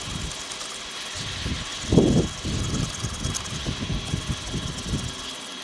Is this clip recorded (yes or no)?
yes